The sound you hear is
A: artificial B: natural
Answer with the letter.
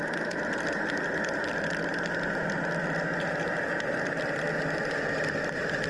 B